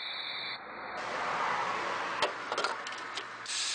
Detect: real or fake real